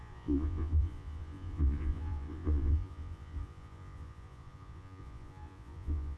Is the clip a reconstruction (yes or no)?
yes